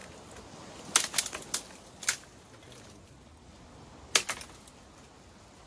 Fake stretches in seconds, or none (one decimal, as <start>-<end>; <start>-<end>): none